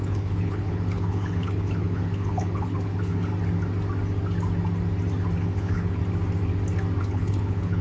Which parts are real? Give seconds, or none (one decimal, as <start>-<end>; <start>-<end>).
3.3-5.4; 6.0-7.0

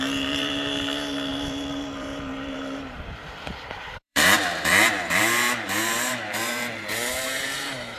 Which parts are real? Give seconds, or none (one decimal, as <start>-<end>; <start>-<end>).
none

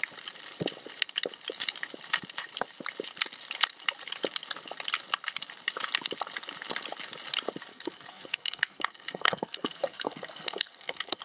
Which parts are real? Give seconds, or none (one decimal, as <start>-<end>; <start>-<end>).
0.0-7.7

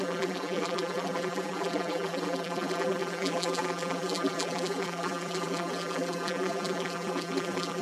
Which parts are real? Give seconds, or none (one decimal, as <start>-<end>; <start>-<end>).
none

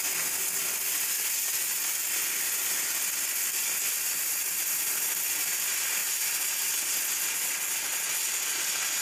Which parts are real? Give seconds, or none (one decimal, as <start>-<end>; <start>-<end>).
0.0-6.0; 6.5-9.0